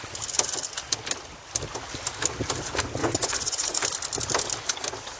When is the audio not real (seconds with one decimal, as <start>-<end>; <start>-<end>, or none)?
3.0-3.9